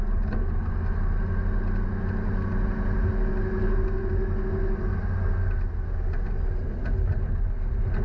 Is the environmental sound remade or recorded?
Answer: recorded